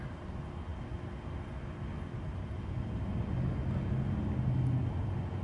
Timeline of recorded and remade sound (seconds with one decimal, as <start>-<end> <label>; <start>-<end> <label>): 0.0-5.4 recorded